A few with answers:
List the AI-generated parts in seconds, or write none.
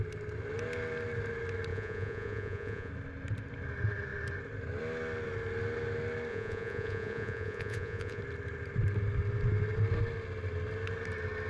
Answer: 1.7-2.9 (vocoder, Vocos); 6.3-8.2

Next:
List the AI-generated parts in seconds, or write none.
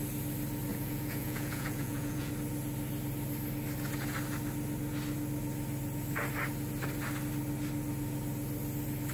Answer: 0.7-2.3 (vocoder, Vocos)